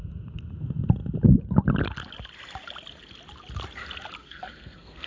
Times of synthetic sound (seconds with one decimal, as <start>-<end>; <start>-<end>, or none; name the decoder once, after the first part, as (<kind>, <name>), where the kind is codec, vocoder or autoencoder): 4.2-5.1 (codec, SNAC)

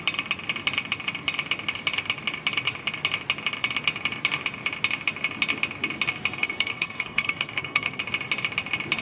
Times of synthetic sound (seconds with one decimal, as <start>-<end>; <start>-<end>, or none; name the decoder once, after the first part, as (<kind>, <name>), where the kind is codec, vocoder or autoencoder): 6.4-8.0 (codec, SNAC)

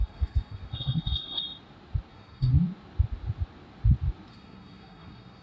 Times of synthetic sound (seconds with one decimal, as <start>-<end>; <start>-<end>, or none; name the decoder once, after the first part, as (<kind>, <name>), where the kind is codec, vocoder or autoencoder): 0.0-1.4 (codec, SNAC); 2.1-2.5; 4.3-5.4

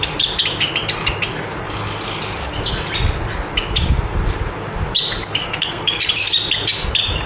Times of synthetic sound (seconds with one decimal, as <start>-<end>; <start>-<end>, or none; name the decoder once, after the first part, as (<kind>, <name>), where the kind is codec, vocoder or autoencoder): 5.4-6.0 (codec, SNAC)

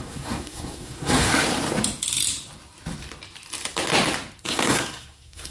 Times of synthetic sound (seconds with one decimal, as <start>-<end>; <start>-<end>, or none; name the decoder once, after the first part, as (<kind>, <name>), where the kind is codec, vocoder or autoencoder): 0.0-1.3 (codec, SNAC); 4.4-5.5

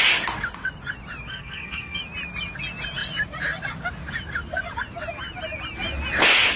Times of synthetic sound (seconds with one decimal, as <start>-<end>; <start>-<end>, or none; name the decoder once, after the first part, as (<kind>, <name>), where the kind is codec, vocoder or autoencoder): 1.3-2.0 (codec, SNAC)

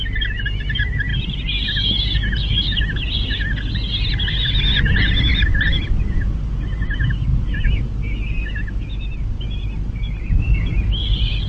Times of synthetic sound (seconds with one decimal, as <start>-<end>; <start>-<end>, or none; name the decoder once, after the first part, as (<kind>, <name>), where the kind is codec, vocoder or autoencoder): none